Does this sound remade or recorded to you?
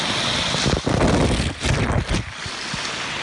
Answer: recorded